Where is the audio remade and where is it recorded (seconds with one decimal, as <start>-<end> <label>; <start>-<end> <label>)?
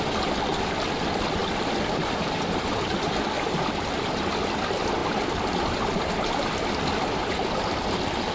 0.0-1.4 recorded; 1.4-4.4 remade; 4.4-5.0 recorded; 5.0-6.1 remade; 6.1-8.3 recorded